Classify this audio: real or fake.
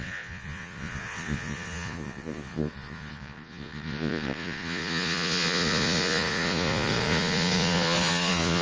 fake